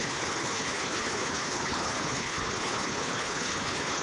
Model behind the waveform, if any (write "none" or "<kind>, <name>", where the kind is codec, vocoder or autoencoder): codec, HILCodec